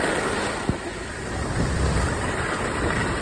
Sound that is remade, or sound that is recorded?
recorded